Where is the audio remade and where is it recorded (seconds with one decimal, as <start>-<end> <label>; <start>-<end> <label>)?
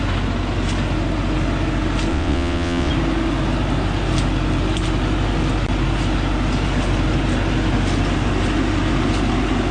0.0-2.1 recorded; 2.1-2.9 remade; 2.9-9.7 recorded